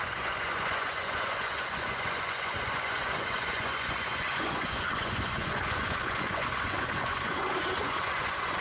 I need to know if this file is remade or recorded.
remade